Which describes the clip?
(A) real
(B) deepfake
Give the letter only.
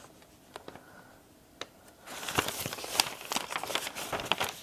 A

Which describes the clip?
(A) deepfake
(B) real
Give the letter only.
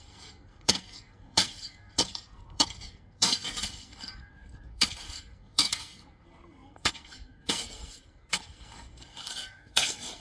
A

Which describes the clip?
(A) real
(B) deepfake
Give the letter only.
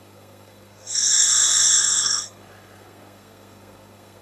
B